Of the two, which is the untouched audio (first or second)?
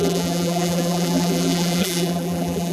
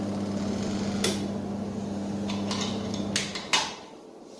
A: second